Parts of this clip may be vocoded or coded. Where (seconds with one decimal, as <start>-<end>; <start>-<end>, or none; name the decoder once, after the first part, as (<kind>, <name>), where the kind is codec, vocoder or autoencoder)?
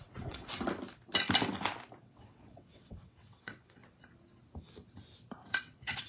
0.0-0.5 (vocoder, WaveNeXt); 2.0-3.8; 5.6-6.1